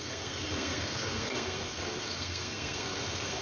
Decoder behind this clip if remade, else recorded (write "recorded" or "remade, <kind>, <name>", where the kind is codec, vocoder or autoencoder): remade, codec, SNAC